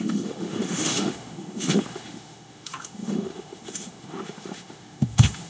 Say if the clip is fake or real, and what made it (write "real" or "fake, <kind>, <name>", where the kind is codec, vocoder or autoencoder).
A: fake, autoencoder, DAC-VAE